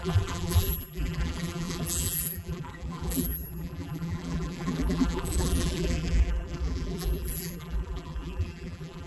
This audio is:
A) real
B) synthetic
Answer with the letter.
B